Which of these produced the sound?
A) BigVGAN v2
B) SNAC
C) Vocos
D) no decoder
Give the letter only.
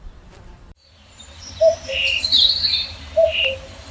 A